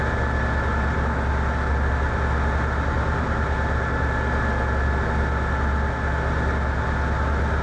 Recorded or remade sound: recorded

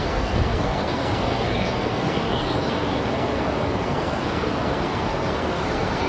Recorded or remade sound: remade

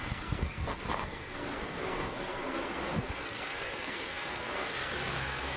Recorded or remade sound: remade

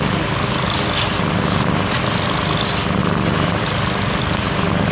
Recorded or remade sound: recorded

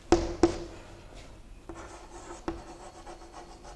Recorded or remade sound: recorded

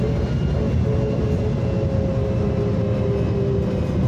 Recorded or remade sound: recorded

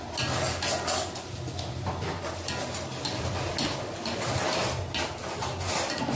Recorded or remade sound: recorded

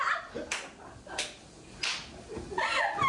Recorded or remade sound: recorded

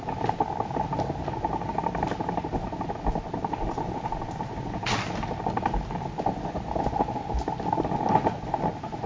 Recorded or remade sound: recorded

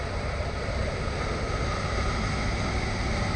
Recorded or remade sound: recorded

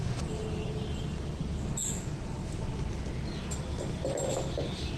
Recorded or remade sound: recorded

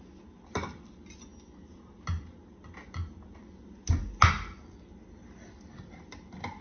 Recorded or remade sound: recorded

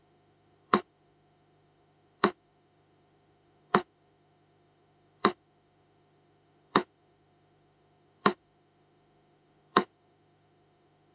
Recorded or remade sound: remade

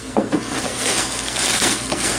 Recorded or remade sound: remade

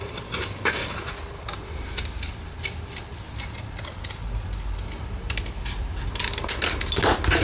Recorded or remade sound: recorded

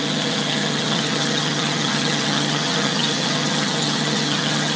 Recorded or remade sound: remade